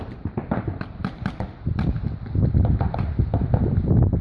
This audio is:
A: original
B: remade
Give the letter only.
A